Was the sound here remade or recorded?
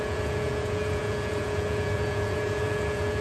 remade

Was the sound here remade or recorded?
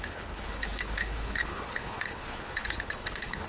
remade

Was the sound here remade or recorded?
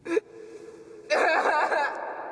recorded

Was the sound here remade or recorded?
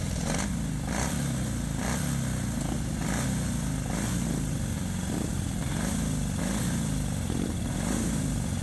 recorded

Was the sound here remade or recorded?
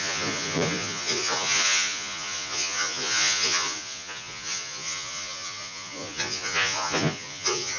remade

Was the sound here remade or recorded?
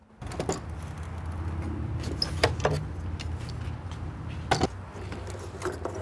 recorded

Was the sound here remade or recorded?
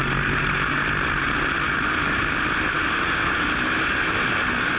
recorded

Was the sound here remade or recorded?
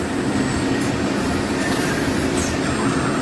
recorded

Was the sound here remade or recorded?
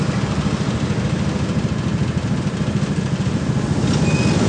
recorded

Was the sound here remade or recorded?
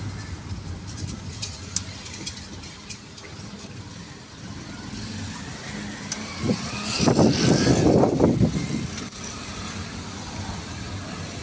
recorded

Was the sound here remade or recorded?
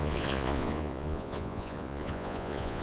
remade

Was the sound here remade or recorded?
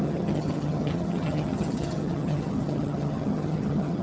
remade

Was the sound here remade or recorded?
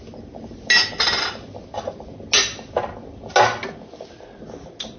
recorded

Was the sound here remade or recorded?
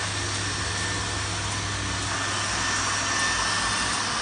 recorded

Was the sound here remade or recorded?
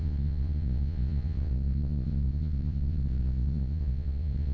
remade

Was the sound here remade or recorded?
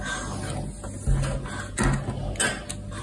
recorded